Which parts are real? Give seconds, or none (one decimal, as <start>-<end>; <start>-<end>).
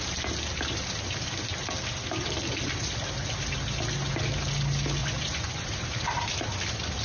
0.0-5.0; 5.7-7.0